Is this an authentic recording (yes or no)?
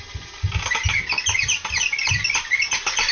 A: yes